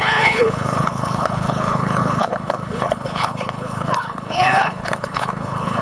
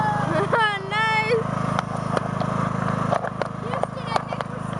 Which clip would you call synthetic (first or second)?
first